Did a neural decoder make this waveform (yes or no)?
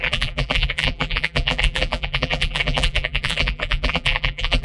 yes